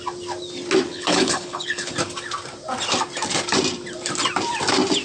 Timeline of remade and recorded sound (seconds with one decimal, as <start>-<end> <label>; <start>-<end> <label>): 0.0-0.9 recorded; 0.9-1.9 remade; 1.9-5.0 recorded